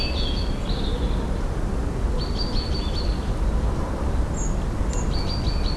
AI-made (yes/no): no